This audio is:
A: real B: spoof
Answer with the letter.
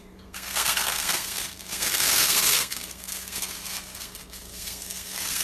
B